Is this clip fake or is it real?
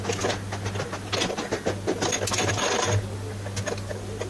real